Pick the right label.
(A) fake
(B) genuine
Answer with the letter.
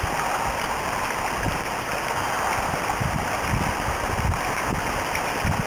B